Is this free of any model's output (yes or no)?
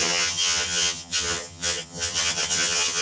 no